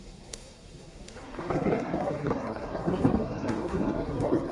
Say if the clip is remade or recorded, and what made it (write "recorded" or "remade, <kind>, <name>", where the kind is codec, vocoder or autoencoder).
remade, codec, SNAC